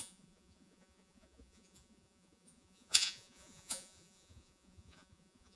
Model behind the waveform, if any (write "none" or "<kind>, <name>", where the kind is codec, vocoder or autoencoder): vocoder, Vocos